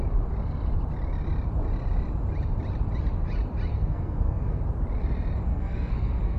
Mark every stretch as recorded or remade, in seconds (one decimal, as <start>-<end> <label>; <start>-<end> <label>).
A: 0.0-3.7 recorded; 3.7-4.6 remade; 4.6-5.5 recorded; 5.5-6.4 remade